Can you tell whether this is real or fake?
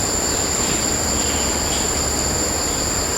real